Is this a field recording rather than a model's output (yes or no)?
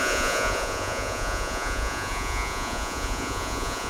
no